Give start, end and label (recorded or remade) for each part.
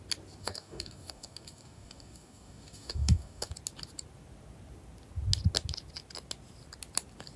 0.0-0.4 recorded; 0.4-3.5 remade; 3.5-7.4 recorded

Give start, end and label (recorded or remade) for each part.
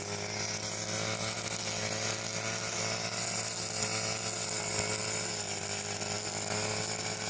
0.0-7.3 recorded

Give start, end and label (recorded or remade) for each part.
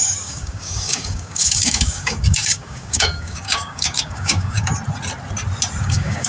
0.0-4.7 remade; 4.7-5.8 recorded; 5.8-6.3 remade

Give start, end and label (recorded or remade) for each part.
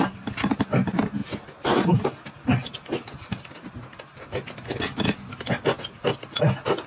0.0-6.9 recorded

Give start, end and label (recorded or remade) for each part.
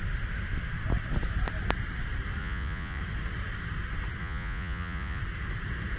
0.0-2.4 recorded; 2.4-3.0 remade; 3.0-4.2 recorded; 4.2-5.2 remade; 5.2-6.0 recorded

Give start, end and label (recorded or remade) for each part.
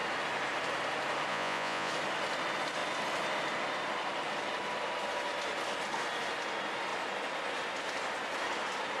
0.0-1.3 recorded; 1.3-1.9 remade; 1.9-9.0 recorded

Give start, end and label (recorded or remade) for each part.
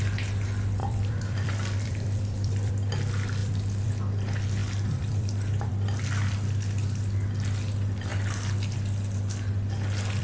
0.0-0.8 recorded; 0.8-2.7 remade; 2.7-3.4 recorded; 3.4-3.9 remade; 3.9-4.6 recorded; 4.6-5.7 remade; 5.7-10.2 recorded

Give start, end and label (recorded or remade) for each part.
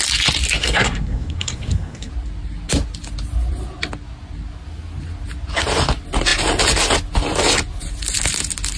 0.0-0.6 recorded; 0.6-2.1 remade; 2.1-8.8 recorded